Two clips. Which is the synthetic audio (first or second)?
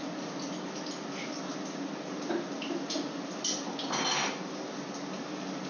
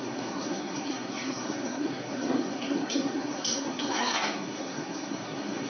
second